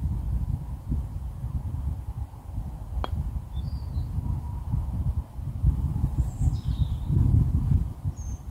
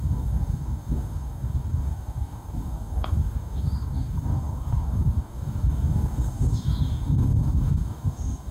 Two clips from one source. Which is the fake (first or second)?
second